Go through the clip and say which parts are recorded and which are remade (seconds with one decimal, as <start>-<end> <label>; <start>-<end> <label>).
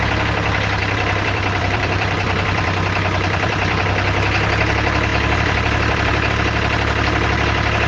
0.0-0.8 recorded; 0.8-3.8 remade; 3.8-5.1 recorded; 5.1-6.3 remade; 6.3-7.9 recorded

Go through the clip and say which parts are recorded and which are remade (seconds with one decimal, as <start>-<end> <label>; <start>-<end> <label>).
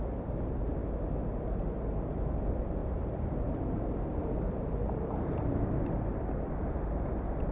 0.0-7.5 remade